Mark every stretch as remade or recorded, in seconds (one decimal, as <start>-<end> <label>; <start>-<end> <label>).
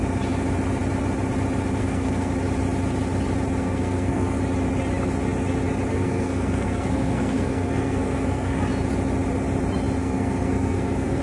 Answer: 0.0-1.8 recorded; 1.8-2.3 remade; 2.3-3.6 recorded; 3.6-4.4 remade; 4.4-5.9 recorded; 5.9-8.6 remade; 8.6-10.0 recorded; 10.0-11.2 remade